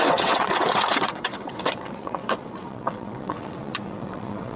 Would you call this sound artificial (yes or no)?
yes